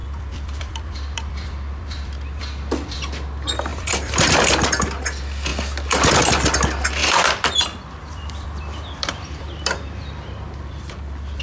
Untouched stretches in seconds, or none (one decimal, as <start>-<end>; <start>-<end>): 3.1-3.7; 4.4-7.0